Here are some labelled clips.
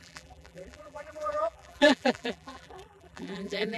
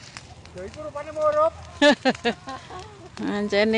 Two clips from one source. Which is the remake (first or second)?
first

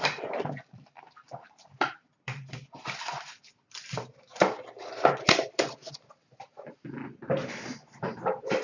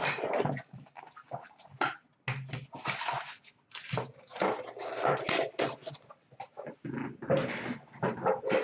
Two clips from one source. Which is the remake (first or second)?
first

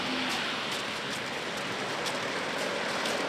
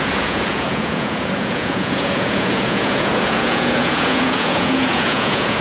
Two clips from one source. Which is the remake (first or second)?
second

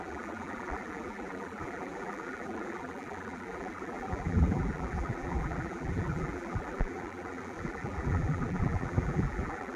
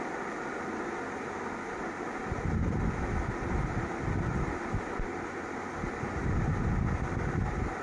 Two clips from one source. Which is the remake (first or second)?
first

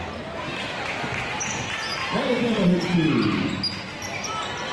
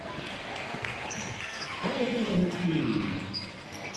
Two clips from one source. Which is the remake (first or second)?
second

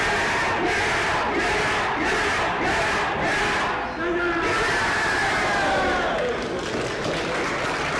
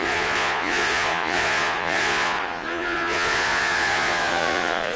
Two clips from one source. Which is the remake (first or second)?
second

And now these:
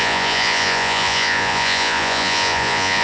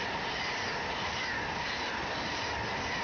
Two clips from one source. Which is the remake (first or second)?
first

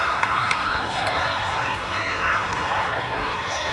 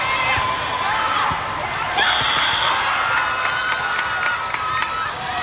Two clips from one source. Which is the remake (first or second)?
first